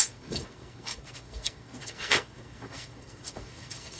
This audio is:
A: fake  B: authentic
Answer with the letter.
A